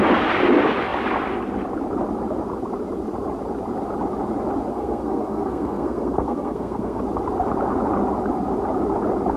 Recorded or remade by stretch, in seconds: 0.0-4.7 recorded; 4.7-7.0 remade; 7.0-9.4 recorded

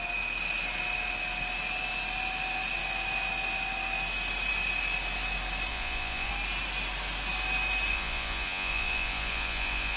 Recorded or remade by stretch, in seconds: 0.0-5.7 recorded; 5.7-6.3 remade; 6.3-7.9 recorded; 7.9-10.0 remade

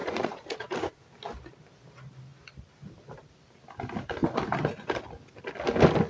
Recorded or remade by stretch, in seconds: 0.0-1.0 remade; 1.0-6.1 recorded